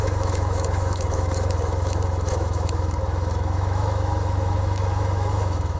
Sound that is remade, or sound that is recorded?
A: remade